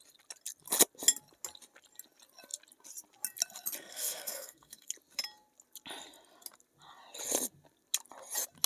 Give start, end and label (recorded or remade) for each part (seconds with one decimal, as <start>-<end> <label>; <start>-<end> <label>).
0.0-3.8 recorded; 3.8-4.9 remade; 4.9-8.7 recorded